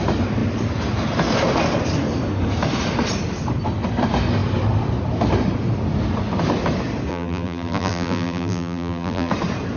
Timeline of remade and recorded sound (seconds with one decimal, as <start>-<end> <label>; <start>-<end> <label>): 0.0-7.1 recorded; 7.1-9.3 remade; 9.3-9.8 recorded